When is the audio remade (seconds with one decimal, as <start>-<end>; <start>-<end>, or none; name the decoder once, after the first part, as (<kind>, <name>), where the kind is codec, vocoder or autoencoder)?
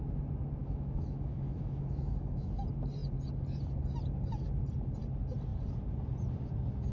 0.6-2.6 (autoencoder, DAC-VAE)